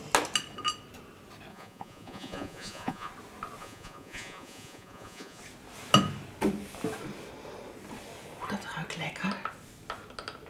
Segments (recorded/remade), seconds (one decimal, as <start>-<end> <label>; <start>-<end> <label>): 0.0-1.5 recorded; 1.5-3.1 remade; 3.1-3.6 recorded; 3.6-5.4 remade; 5.4-10.5 recorded